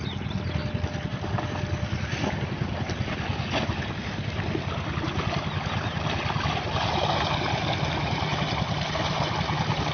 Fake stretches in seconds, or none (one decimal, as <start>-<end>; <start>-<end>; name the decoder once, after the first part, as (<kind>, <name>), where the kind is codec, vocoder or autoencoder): none